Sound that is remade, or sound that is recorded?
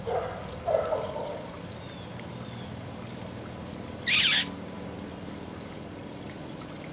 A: recorded